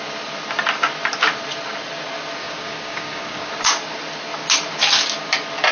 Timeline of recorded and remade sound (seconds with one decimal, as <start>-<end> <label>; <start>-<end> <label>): 0.0-2.4 recorded; 2.4-3.5 remade; 3.5-5.7 recorded